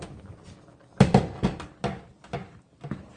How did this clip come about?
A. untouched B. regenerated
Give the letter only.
A